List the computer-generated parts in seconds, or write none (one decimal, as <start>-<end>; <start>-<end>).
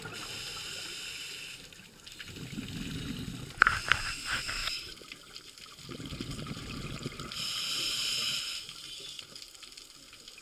4.6-5.9